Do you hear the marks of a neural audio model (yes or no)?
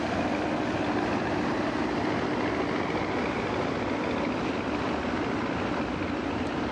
no